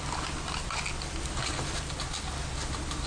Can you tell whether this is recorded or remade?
recorded